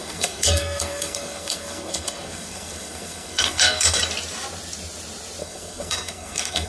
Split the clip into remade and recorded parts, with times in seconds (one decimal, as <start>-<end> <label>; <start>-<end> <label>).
0.0-4.0 remade; 4.0-5.4 recorded; 5.4-6.7 remade